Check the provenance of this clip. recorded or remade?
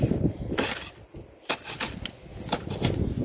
recorded